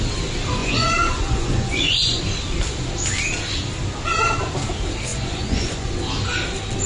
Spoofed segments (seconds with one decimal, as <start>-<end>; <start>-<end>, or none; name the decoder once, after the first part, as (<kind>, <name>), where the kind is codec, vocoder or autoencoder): 0.6-2.2 (vocoder, Vocos); 5.1-6.0